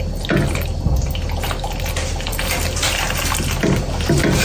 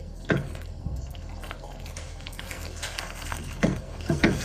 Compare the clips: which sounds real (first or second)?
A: first